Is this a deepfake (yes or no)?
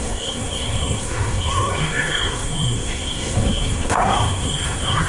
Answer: yes